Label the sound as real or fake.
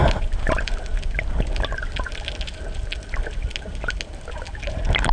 real